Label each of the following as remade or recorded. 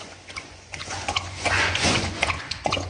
remade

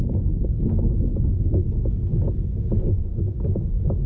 remade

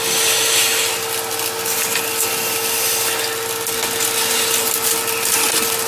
recorded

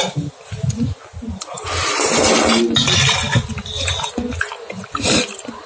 recorded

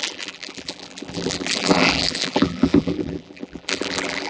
remade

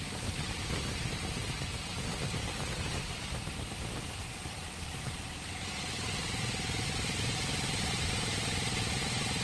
remade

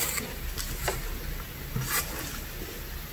recorded